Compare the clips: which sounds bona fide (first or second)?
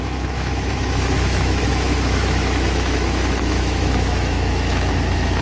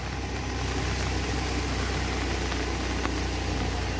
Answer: second